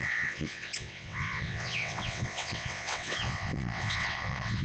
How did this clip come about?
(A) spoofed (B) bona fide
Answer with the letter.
A